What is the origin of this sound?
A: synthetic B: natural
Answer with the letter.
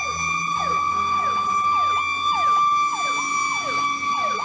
B